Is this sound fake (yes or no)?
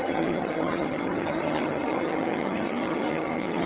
yes